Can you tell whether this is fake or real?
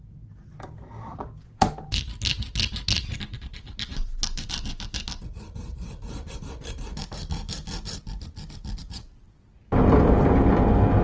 real